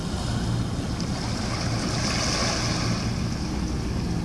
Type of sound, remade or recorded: recorded